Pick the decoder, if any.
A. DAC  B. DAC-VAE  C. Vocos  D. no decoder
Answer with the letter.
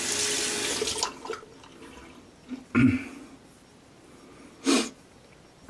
D